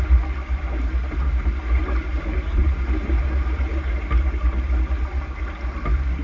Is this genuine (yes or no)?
yes